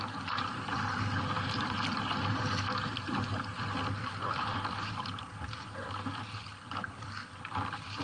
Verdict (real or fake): real